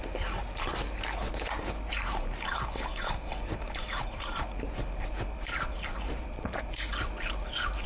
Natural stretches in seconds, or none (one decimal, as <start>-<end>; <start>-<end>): 0.7-1.9